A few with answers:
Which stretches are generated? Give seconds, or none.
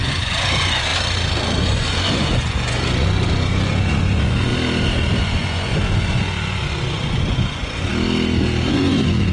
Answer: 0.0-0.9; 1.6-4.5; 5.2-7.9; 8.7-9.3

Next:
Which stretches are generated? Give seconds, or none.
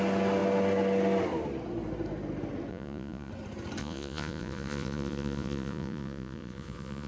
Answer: 2.7-3.3; 3.8-7.1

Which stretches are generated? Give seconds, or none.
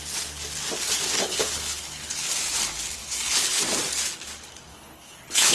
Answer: 1.2-2.3; 3.0-3.6; 4.7-5.5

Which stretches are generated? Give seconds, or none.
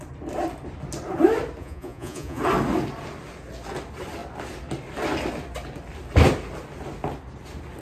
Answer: 1.6-2.4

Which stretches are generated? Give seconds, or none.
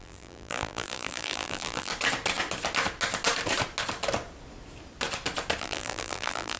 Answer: 0.0-1.9; 5.6-6.6